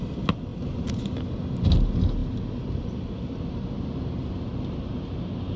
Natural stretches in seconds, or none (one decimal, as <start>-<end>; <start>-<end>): 0.0-5.6